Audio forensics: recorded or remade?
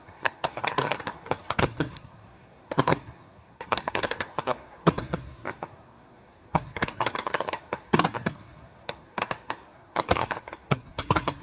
remade